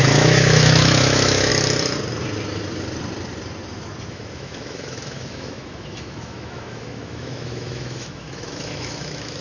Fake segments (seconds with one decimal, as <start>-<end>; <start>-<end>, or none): 0.0-1.5; 4.1-9.4